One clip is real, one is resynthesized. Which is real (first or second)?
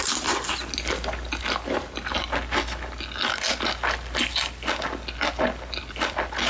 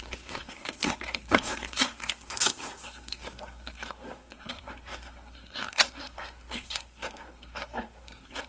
first